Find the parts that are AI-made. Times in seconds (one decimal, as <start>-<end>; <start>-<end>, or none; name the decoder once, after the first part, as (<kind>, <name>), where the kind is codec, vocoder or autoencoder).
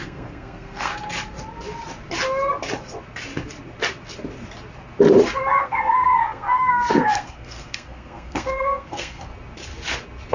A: 0.0-0.9 (codec, SNAC); 5.6-9.3